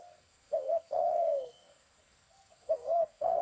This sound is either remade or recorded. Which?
remade